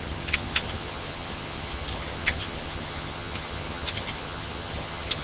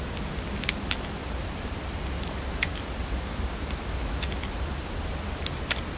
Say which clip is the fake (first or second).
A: first